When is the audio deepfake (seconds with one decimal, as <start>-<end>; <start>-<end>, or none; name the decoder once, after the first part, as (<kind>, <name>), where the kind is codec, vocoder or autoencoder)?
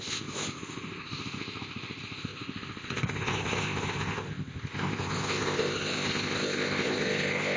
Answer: 0.0-7.6 (codec, ZipCodec)